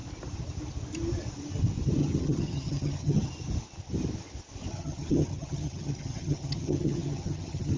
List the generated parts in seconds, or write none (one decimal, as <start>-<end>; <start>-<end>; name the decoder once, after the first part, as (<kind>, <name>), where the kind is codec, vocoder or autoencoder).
2.0-3.3 (vocoder, HiFi-GAN); 4.7-7.8